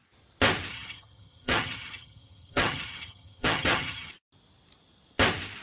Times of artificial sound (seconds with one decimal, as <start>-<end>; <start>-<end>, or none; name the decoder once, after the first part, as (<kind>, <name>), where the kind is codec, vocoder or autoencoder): 0.7-4.1 (vocoder, HiFi-GAN)